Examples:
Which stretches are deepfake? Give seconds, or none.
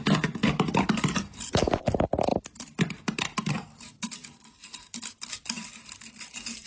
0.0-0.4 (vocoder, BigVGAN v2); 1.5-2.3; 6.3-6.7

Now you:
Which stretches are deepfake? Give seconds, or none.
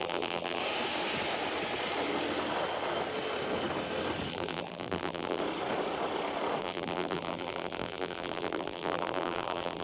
0.0-0.6 (vocoder, BigVGAN v2); 4.3-5.4; 6.6-9.8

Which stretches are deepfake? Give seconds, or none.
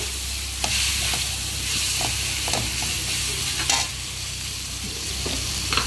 0.9-3.2 (vocoder, BigVGAN v2); 3.9-5.9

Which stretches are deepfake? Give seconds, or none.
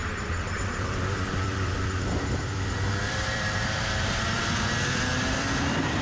0.0-6.0 (vocoder, BigVGAN v2)